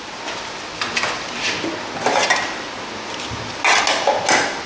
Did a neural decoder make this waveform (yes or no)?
no